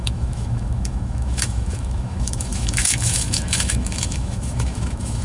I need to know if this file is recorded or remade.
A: remade